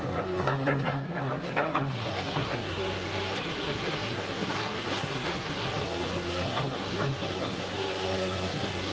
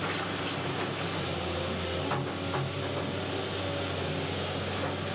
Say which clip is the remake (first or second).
first